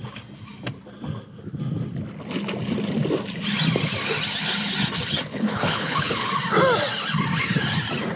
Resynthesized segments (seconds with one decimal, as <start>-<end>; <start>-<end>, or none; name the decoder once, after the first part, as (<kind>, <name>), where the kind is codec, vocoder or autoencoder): 5.3-6.3 (codec, HILCodec)